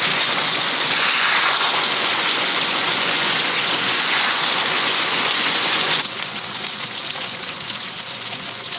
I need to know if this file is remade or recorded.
remade